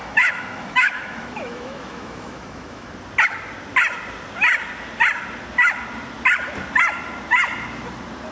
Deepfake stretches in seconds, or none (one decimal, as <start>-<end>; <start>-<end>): 0.0-2.9